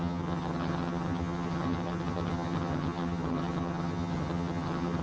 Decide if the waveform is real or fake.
fake